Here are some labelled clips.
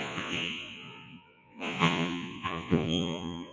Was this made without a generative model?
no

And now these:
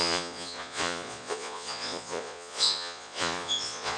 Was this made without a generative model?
no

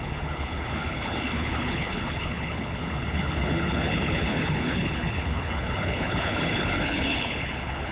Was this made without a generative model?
no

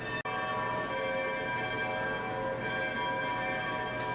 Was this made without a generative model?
yes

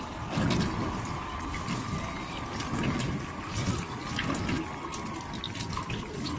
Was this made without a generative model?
yes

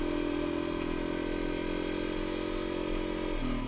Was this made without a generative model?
yes